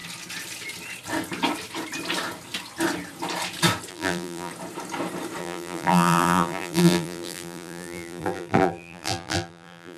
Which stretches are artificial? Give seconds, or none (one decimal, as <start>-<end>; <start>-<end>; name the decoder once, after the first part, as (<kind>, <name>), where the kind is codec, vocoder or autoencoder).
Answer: 3.9-4.5 (vocoder, BigVGAN v2); 5.4-10.0